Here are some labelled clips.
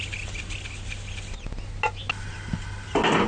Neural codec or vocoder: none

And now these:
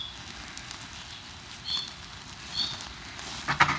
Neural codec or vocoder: none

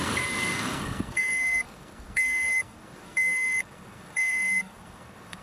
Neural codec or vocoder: codec, SNAC